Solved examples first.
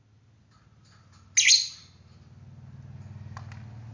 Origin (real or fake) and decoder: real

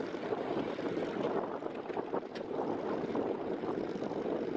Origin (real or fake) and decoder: real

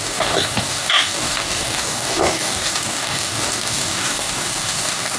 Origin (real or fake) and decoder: fake, codec, DAC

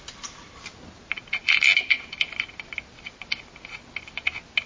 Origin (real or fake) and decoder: real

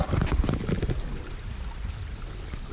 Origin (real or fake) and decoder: real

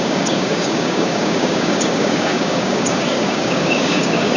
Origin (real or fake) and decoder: fake, codec, DAC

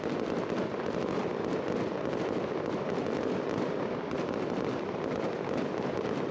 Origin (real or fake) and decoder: real